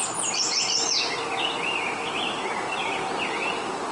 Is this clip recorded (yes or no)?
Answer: no